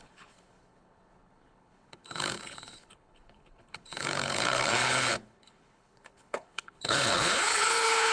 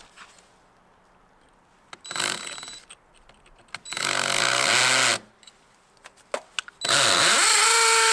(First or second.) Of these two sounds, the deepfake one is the first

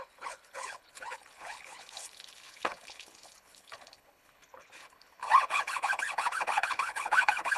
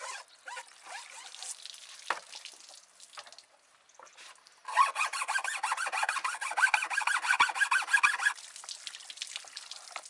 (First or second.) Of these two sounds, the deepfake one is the first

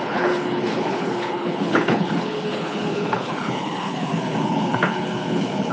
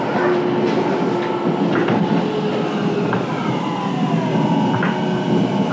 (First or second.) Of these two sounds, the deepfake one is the first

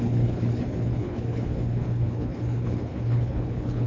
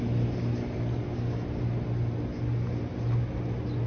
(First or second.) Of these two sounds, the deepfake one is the first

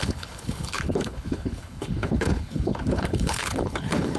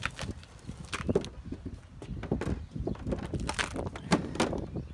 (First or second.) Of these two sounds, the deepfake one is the first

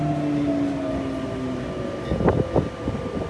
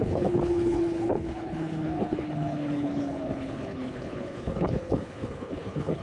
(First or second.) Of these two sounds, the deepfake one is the second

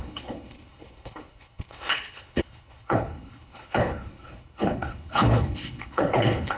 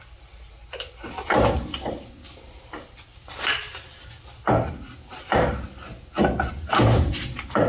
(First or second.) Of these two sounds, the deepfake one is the first